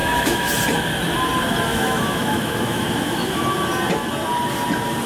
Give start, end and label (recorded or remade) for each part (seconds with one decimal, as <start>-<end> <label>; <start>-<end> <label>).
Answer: 0.0-0.5 remade; 0.5-1.7 recorded; 1.7-3.4 remade; 3.4-5.1 recorded